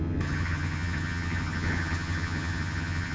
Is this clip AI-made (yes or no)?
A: yes